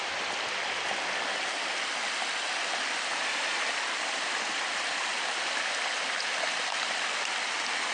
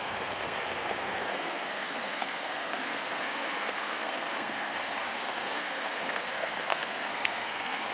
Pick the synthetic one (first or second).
second